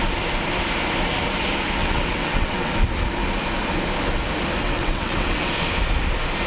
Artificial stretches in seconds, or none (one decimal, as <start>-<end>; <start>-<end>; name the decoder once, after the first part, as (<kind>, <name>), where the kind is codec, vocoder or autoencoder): 1.8-2.7 (vocoder, WaveNeXt); 4.6-5.5